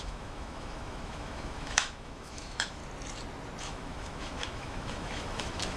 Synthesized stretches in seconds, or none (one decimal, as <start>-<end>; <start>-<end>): 0.0-2.8; 3.6-5.8